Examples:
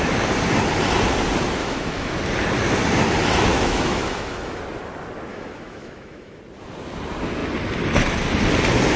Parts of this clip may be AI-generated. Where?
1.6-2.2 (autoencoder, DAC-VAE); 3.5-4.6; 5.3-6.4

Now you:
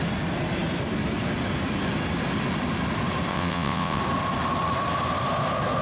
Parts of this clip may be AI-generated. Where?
3.3-4.0 (vocoder, WaveNeXt)